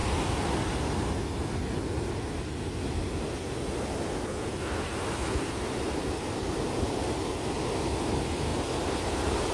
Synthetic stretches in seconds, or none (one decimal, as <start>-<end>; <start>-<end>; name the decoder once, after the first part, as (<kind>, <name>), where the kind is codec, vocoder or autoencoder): none

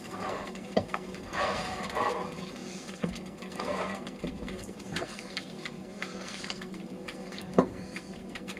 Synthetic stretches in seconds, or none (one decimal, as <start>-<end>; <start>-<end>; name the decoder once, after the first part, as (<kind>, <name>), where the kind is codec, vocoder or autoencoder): 0.0-8.6 (codec, SNAC)